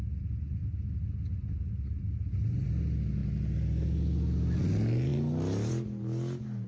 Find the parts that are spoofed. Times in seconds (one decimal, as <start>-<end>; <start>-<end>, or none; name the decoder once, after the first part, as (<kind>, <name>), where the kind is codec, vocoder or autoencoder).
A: none